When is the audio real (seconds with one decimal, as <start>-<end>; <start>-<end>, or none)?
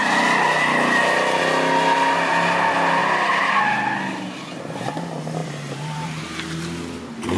0.0-5.4; 6.2-7.4